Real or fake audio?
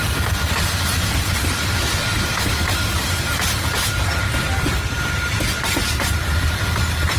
real